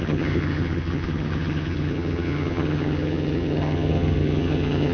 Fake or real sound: fake